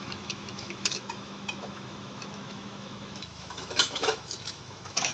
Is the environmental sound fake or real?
fake